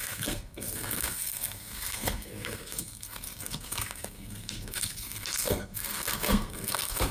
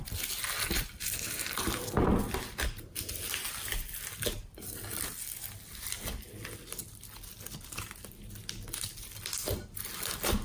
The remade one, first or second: first